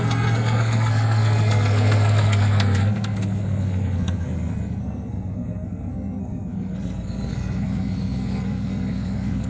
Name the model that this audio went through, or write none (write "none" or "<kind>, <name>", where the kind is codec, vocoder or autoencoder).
codec, SNAC